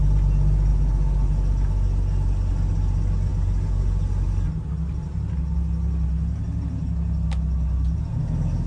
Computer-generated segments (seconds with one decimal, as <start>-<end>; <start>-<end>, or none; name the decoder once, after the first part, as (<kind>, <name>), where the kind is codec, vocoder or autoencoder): none